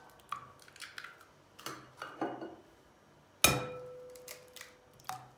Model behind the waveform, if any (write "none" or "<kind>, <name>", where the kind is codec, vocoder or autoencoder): none